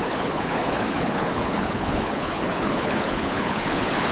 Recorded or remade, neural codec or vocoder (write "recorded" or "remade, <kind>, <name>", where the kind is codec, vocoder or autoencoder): remade, codec, HILCodec